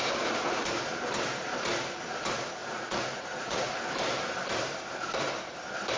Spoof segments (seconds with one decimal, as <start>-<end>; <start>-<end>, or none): 2.6-3.7